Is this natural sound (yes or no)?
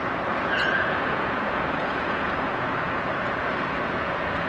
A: no